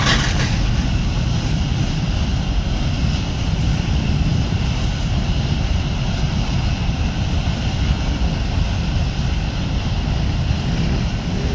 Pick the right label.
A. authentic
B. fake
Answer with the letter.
A